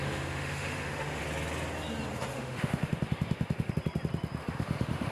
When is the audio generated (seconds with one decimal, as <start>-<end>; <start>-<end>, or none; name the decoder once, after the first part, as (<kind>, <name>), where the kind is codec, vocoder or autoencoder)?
0.0-1.2 (autoencoder, DAC-VAE); 2.3-3.7; 4.4-5.1